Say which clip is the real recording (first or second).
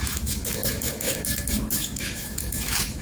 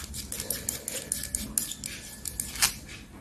second